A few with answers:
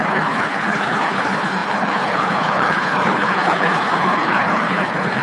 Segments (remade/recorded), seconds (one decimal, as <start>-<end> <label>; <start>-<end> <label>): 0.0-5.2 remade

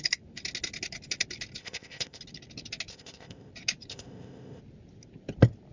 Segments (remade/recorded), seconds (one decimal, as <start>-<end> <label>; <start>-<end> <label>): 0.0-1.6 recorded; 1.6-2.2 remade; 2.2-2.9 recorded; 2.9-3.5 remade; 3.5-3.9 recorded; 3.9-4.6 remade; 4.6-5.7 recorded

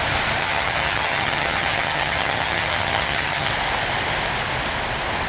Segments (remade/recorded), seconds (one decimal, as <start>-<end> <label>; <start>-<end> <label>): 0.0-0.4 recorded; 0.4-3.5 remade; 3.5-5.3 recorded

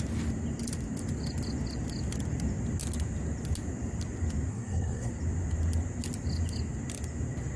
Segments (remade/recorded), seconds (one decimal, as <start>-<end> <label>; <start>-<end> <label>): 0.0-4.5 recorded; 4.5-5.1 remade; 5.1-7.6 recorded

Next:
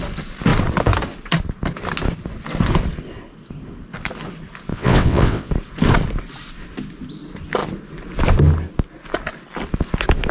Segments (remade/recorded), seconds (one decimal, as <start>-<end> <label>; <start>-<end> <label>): 0.0-4.7 recorded; 4.7-5.5 remade; 5.5-10.3 recorded

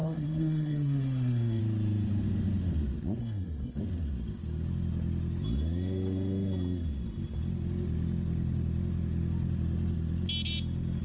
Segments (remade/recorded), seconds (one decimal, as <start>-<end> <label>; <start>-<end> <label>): 0.0-1.6 remade; 1.6-3.2 recorded; 3.2-3.8 remade; 3.8-11.0 recorded

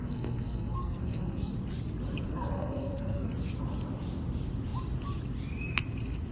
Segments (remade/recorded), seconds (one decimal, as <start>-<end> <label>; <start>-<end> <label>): 0.0-1.5 remade; 1.5-2.3 recorded; 2.3-3.3 remade; 3.3-6.3 recorded